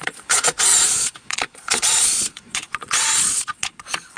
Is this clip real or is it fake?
fake